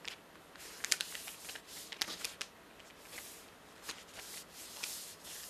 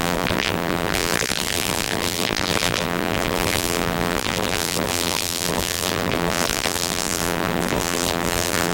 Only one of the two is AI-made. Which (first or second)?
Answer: second